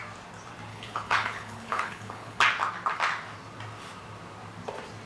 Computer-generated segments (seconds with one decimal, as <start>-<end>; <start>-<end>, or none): 0.7-2.4